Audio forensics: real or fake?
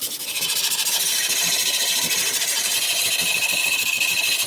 real